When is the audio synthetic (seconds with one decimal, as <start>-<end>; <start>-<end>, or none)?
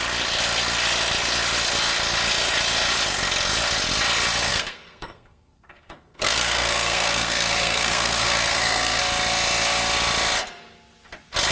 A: 4.5-9.0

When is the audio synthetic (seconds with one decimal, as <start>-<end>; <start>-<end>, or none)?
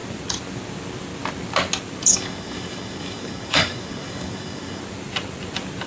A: 2.1-4.8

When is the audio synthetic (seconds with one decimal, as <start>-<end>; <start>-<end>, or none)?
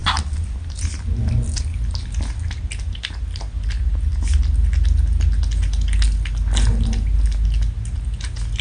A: none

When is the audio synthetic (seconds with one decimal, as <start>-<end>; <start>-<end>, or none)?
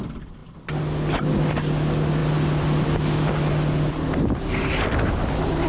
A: none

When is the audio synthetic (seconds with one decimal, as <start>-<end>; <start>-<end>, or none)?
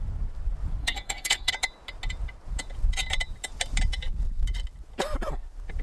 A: 0.8-1.5